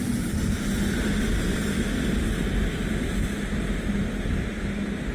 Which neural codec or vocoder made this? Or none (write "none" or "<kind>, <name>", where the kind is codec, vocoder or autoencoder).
none